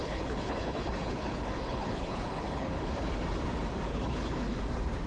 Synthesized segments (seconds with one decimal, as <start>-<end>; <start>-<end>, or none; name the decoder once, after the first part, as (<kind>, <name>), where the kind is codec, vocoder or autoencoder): 0.0-3.1 (codec, HILCodec); 3.9-4.6